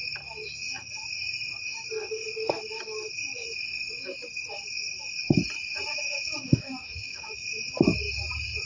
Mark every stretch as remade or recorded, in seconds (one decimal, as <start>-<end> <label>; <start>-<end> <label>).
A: 0.0-5.9 recorded; 5.9-7.6 remade; 7.6-8.7 recorded